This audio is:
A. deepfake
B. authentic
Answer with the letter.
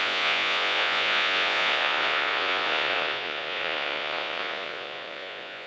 A